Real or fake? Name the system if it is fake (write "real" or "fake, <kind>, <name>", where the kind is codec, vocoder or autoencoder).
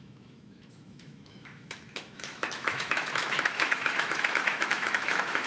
fake, autoencoder, DAC-VAE